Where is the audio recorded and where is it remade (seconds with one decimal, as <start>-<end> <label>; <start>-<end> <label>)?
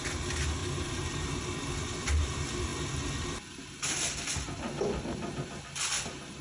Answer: 0.0-6.4 recorded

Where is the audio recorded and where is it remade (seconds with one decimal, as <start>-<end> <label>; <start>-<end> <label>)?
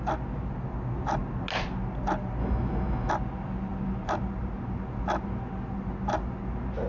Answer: 0.0-2.4 recorded; 2.4-3.1 remade; 3.1-6.9 recorded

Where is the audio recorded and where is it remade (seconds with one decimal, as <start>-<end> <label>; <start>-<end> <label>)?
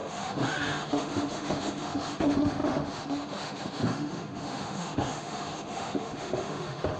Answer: 0.0-7.0 remade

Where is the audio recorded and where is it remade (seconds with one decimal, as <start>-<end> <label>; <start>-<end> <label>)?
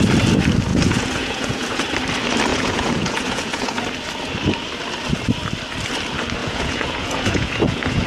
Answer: 0.0-0.7 recorded; 0.7-1.8 remade; 1.8-2.5 recorded; 2.5-3.8 remade; 3.8-6.4 recorded; 6.4-8.1 remade